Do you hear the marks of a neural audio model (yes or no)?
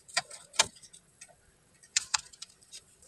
yes